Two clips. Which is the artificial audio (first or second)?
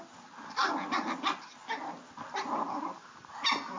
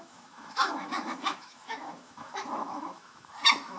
second